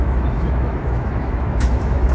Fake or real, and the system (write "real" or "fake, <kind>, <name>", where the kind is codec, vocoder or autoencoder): fake, autoencoder, DAC-VAE